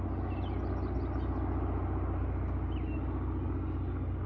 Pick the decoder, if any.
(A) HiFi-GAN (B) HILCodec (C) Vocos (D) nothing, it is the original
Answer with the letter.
D